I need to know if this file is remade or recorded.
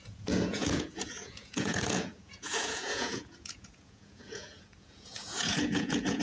remade